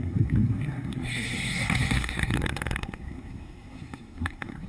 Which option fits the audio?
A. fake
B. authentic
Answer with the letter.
A